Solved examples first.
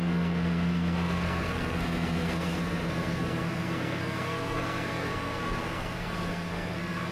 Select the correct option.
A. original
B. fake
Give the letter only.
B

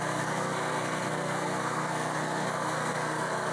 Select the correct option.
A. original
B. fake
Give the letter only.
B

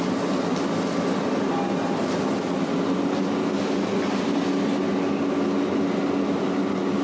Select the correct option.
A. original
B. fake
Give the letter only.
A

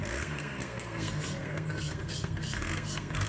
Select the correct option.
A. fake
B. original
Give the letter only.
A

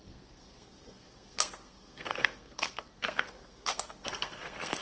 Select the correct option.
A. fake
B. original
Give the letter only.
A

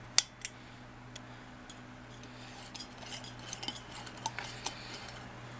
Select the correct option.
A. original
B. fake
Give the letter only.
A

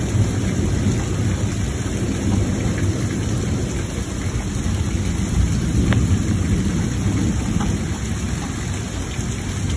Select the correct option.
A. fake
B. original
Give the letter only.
B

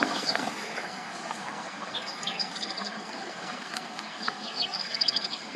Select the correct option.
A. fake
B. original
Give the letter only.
A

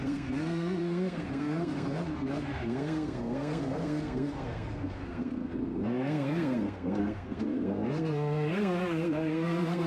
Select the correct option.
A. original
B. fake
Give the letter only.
B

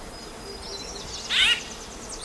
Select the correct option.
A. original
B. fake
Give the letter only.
A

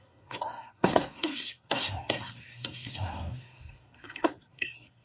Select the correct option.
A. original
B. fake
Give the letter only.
B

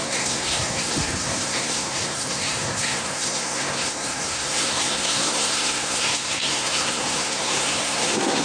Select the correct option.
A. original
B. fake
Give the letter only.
B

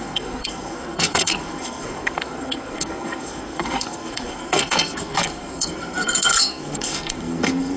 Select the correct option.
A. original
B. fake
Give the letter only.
B